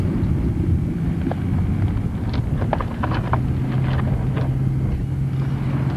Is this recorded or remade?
recorded